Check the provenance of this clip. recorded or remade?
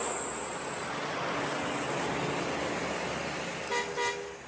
recorded